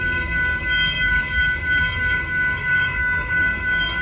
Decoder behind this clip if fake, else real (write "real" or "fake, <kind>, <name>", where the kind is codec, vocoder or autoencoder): fake, codec, SNAC